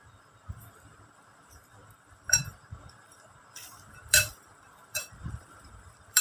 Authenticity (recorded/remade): remade